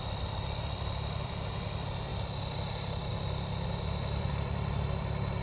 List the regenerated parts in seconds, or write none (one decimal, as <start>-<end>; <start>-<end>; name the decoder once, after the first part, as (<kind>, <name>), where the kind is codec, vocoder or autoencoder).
0.0-5.4 (vocoder, BigVGAN v2)